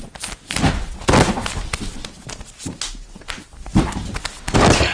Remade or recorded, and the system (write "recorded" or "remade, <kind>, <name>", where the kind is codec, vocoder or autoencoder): recorded